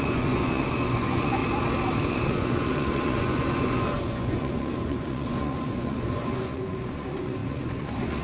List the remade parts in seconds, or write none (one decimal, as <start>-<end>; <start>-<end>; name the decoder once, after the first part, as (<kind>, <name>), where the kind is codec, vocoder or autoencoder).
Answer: 0.0-1.4 (vocoder, Vocos); 2.1-8.2